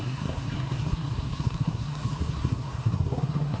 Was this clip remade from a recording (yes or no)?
yes